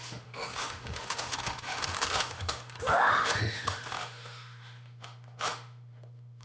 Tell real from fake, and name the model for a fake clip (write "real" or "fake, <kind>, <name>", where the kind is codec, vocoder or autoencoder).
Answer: fake, autoencoder, DAC-VAE